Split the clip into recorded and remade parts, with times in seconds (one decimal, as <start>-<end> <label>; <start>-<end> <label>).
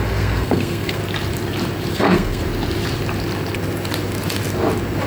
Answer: 0.0-1.0 remade; 1.0-1.9 recorded; 1.9-2.4 remade; 2.4-5.1 recorded